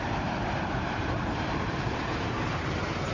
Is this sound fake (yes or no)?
yes